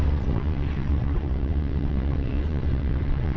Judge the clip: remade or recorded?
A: remade